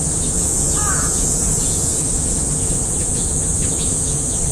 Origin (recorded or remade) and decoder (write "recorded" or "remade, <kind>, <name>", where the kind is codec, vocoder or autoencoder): remade, vocoder, Vocos